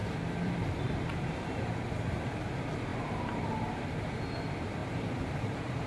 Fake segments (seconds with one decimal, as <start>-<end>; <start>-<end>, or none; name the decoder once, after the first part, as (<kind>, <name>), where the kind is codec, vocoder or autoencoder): 0.0-2.5 (vocoder, BigVGAN v2); 2.9-3.6; 4.8-5.9